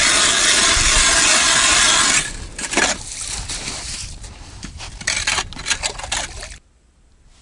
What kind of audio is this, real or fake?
real